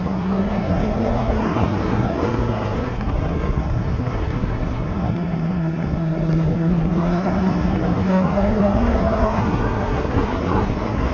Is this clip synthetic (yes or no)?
yes